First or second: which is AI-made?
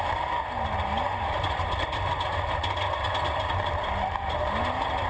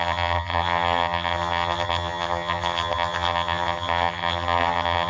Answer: second